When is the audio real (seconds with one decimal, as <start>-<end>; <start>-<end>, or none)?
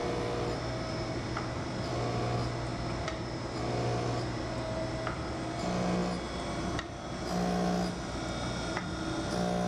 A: 0.0-9.7